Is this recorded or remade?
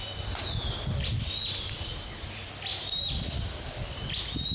recorded